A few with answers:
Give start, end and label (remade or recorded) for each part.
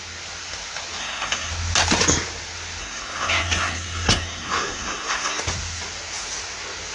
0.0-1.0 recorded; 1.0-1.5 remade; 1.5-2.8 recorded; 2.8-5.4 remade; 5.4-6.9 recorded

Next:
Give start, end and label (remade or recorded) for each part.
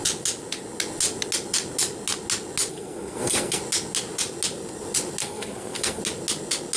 0.0-2.7 recorded; 2.7-3.6 remade; 3.6-5.2 recorded; 5.2-6.0 remade; 6.0-6.8 recorded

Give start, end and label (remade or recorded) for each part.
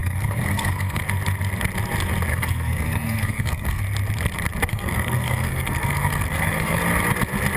0.0-1.0 remade; 1.0-2.3 recorded; 2.3-3.8 remade; 3.8-4.7 recorded; 4.7-6.8 remade; 6.8-7.6 recorded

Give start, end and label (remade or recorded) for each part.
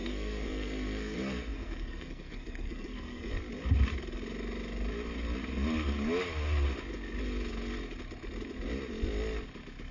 0.0-3.3 remade; 3.3-9.9 recorded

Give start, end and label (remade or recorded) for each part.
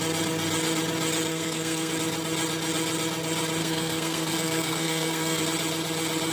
0.0-1.3 recorded; 1.3-1.9 remade; 1.9-3.6 recorded; 3.6-5.4 remade; 5.4-6.3 recorded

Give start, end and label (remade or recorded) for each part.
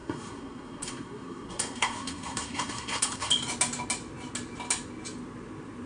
0.0-3.3 remade; 3.3-5.9 recorded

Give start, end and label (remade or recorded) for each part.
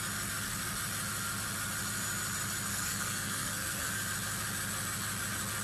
0.0-2.7 recorded; 2.7-3.9 remade; 3.9-5.6 recorded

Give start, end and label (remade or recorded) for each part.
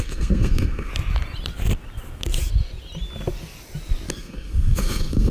0.0-0.9 remade; 0.9-4.1 recorded; 4.1-5.3 remade